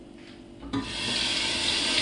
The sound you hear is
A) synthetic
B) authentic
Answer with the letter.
B